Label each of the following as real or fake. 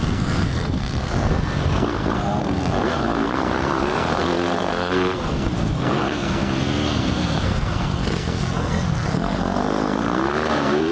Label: fake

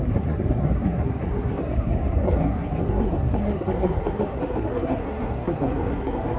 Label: fake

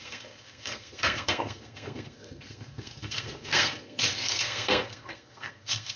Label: fake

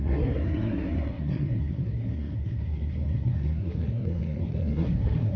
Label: fake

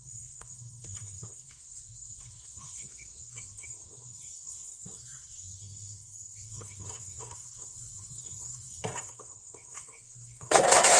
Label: fake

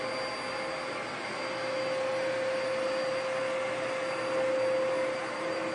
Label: real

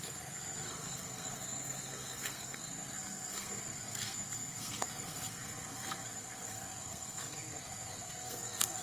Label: fake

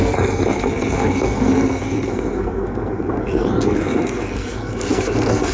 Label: fake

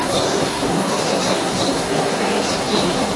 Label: fake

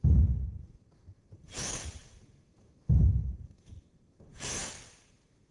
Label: real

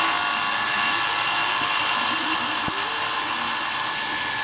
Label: real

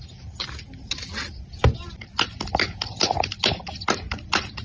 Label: real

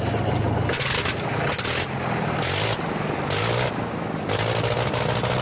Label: real